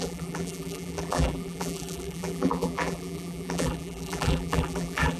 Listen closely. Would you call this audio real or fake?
fake